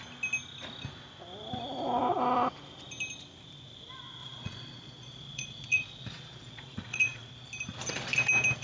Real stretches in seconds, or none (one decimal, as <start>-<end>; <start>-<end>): 0.0-4.2; 7.3-8.6